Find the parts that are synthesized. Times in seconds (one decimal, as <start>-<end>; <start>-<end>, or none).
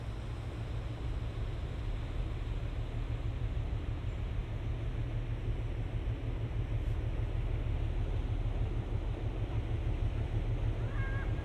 none